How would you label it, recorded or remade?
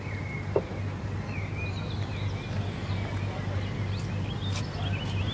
recorded